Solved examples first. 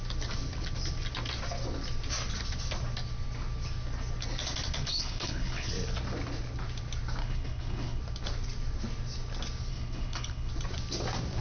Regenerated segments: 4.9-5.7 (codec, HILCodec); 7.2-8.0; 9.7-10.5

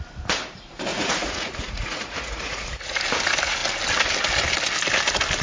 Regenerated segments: 0.9-3.0 (vocoder, Vocos)

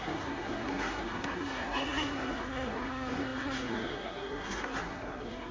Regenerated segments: 0.0-5.5 (codec, SNAC)

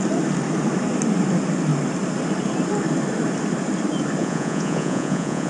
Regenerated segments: 4.2-5.5 (vocoder, Vocos)

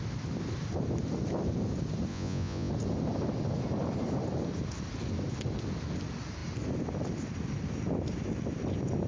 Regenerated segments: 2.1-2.7 (vocoder, Vocos)

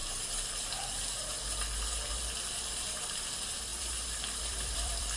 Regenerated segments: 3.1-5.2 (vocoder, BigVGAN v2)

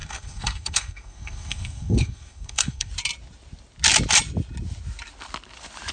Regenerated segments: 0.0-2.9 (codec, SNAC)

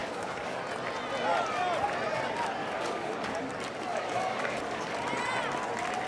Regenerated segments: 0.0-0.6 (codec, DAC); 2.6-3.4; 3.9-4.9